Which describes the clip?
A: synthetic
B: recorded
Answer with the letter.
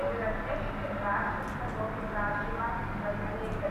B